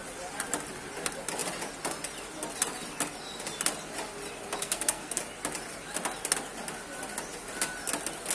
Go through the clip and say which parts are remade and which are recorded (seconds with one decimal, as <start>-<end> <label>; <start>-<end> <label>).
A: 0.0-4.6 recorded; 4.6-5.2 remade; 5.2-8.3 recorded